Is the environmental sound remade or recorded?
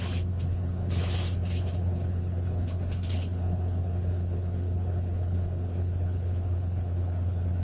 remade